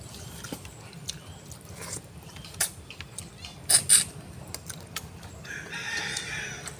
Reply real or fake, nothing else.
real